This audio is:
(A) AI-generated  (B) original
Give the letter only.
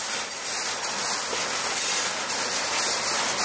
B